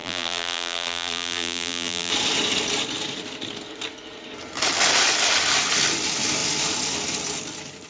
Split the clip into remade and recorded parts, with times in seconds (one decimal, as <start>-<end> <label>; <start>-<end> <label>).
0.0-2.1 remade; 2.1-7.9 recorded

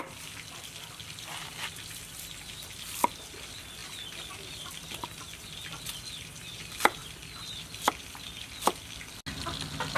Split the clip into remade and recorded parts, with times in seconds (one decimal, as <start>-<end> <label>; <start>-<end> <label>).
0.0-10.0 recorded